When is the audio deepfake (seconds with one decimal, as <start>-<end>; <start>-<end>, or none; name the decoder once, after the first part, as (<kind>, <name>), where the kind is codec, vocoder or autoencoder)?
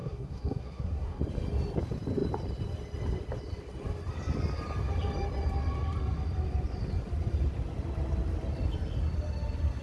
0.0-1.2 (codec, SNAC)